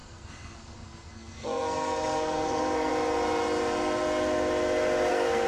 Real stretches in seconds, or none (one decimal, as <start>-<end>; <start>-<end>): 2.9-5.1